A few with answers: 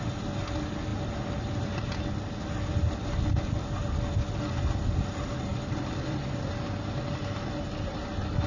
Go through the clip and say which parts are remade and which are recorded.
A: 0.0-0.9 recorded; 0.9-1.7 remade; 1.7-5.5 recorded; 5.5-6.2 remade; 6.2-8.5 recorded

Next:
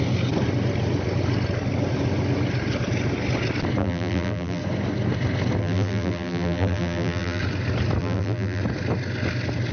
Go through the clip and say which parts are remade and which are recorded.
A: 0.0-3.8 recorded; 3.8-4.6 remade; 4.6-5.6 recorded; 5.6-7.4 remade; 7.4-8.0 recorded; 8.0-8.6 remade; 8.6-9.7 recorded

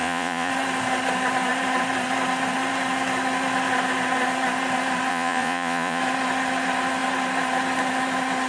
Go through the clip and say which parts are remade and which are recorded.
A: 0.0-0.5 remade; 0.5-5.1 recorded; 5.1-6.0 remade; 6.0-8.5 recorded

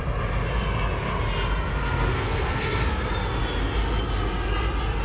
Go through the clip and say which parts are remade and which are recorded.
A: 0.0-1.7 recorded; 1.7-3.1 remade; 3.1-5.0 recorded

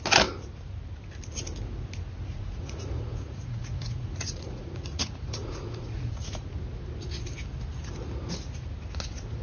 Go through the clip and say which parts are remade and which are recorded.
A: 0.0-2.3 recorded; 2.3-6.5 remade; 6.5-9.4 recorded

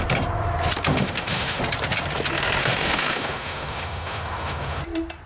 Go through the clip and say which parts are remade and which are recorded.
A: 0.0-0.9 recorded; 0.9-1.6 remade; 1.6-2.6 recorded; 2.6-4.8 remade; 4.8-5.3 recorded

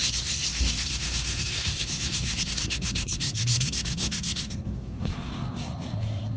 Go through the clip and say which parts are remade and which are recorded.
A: 0.0-6.4 remade